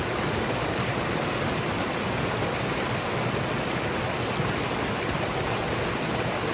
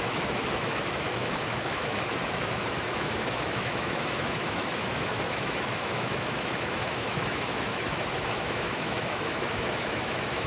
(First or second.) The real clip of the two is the first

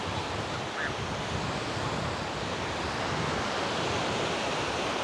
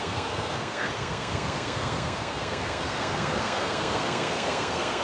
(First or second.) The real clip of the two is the first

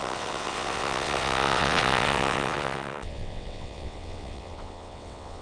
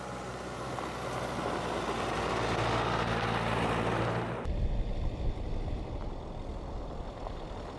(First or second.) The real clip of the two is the second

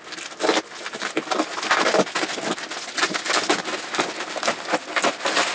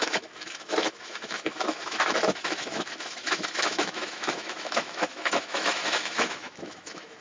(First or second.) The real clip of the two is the first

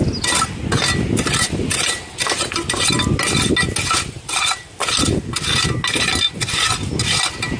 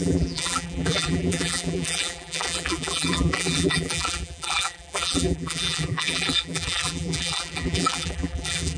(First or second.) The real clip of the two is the first